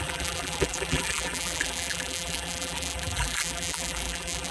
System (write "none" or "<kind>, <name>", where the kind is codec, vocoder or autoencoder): vocoder, BigVGAN v2